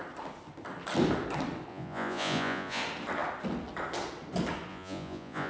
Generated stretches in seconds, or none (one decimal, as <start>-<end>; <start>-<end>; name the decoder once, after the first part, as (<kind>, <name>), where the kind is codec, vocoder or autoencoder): 1.7-2.8 (vocoder, Vocos); 4.7-5.5

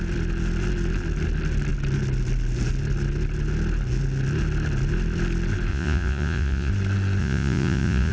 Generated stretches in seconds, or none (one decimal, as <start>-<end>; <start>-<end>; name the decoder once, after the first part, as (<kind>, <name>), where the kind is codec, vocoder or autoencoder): 5.7-6.7 (vocoder, Vocos); 7.2-8.1